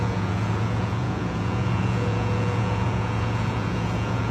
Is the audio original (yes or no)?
no